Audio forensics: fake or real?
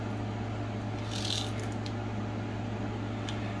real